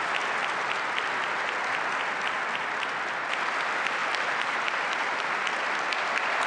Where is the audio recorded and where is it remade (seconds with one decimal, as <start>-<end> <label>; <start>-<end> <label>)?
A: 0.0-4.0 recorded; 4.0-4.9 remade; 4.9-6.5 recorded